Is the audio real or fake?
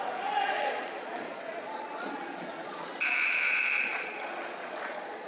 fake